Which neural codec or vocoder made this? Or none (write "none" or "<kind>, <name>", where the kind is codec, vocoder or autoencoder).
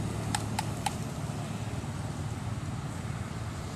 none